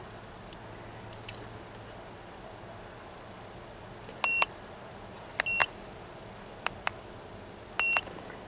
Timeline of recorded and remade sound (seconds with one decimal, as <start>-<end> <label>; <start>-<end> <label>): 0.0-8.5 recorded